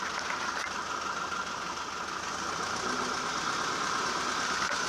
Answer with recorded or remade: recorded